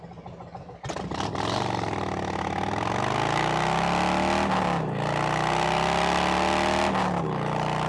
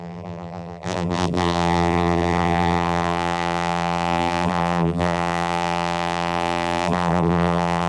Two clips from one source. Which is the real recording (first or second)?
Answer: first